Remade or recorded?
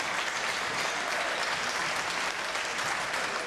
recorded